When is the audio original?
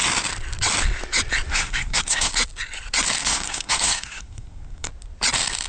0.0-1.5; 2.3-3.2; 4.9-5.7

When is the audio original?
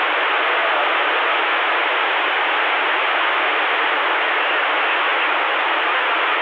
0.0-6.4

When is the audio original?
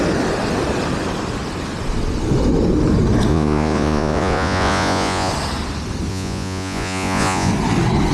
0.0-3.3; 5.3-6.1; 7.5-8.1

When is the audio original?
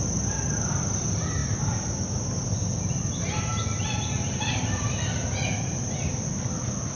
none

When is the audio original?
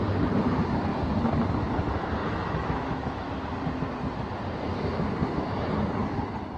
0.0-2.2; 3.4-6.6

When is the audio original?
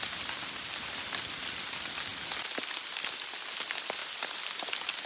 0.0-5.1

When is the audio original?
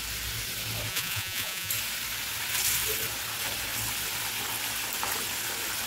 0.0-0.9; 1.7-5.9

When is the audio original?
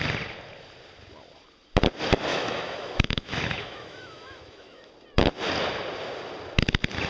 0.0-2.3; 4.9-7.1